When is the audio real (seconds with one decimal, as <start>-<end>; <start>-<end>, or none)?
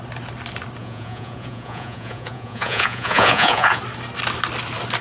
0.0-0.8; 3.8-5.0